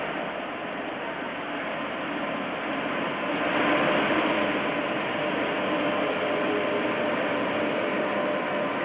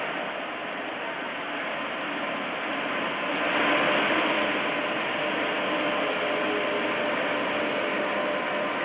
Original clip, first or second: second